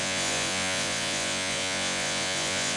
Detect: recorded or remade remade